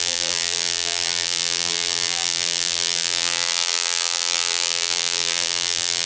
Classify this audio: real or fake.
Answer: fake